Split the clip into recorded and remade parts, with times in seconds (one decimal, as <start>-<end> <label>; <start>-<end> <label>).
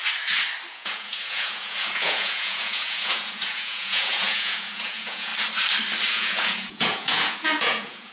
0.0-0.7 recorded; 0.7-5.3 remade; 5.3-6.1 recorded; 6.1-8.1 remade